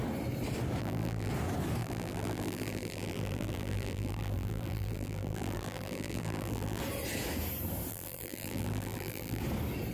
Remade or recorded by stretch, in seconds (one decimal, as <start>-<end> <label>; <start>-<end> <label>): 0.0-0.8 recorded; 0.8-1.3 remade; 1.3-1.8 recorded; 1.8-6.8 remade; 6.8-7.9 recorded; 7.9-9.4 remade; 9.4-9.9 recorded